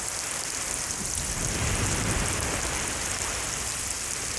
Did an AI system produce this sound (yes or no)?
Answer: no